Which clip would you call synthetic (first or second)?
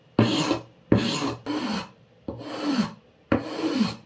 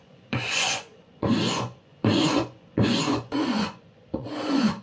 second